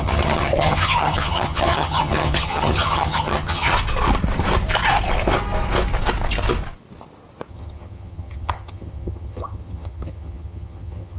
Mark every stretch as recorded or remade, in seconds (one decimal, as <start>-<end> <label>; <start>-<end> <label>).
0.0-3.7 remade; 3.7-7.5 recorded; 7.5-11.2 remade